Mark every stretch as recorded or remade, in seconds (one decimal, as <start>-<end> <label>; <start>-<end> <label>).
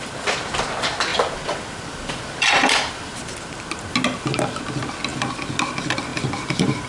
0.0-1.1 recorded; 1.1-3.2 remade; 3.2-6.1 recorded; 6.1-6.9 remade